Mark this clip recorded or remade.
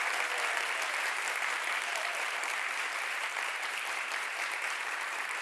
remade